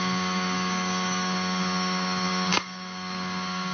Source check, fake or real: fake